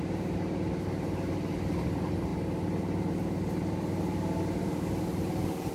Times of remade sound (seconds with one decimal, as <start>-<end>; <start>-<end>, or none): none